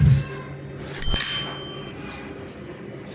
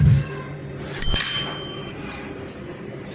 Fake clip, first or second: second